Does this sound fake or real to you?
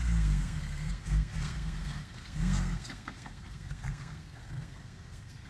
fake